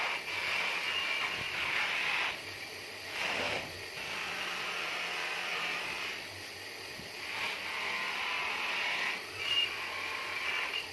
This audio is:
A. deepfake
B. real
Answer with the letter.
B